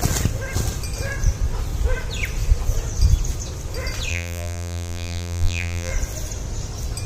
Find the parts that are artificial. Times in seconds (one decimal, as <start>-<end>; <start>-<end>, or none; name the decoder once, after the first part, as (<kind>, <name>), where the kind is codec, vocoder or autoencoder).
4.1-5.9 (vocoder, BigVGAN v2)